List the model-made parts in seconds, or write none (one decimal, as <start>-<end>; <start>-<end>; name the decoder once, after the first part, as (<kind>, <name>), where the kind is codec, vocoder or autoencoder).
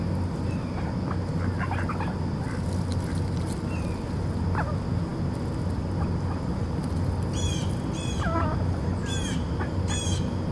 none